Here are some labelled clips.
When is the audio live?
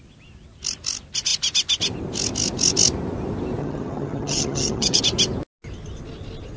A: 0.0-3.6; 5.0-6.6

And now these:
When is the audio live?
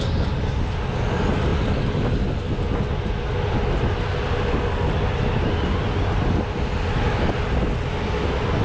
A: 0.0-8.6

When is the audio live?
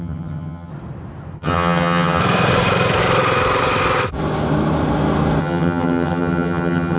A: 0.7-1.4; 2.2-5.4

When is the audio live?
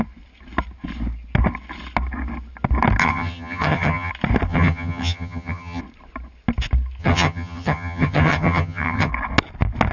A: 0.0-3.0; 4.1-4.5; 5.8-7.0; 9.1-9.9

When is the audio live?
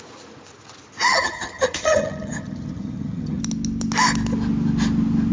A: 0.0-1.1; 3.4-5.3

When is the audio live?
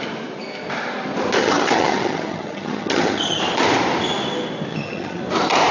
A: 0.0-1.4; 3.4-4.7; 5.2-5.7